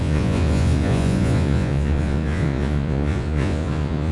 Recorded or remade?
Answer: remade